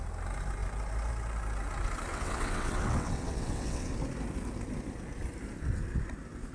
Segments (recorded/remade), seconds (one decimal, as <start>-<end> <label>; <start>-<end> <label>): 0.0-2.1 recorded; 2.1-3.9 remade; 3.9-6.5 recorded